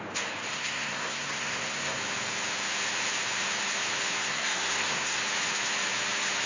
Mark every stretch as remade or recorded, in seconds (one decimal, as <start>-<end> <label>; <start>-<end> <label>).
0.0-0.5 recorded; 0.5-2.0 remade; 2.0-4.2 recorded; 4.2-5.2 remade; 5.2-6.5 recorded